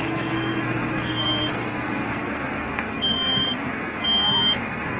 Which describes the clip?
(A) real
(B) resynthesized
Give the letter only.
B